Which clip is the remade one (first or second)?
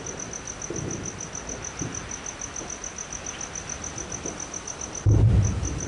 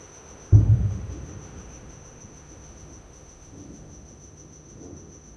second